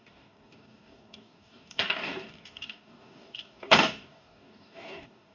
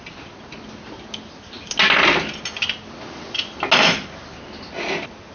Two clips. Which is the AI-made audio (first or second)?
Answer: first